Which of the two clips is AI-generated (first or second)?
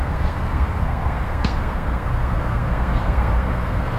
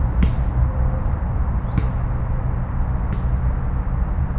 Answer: first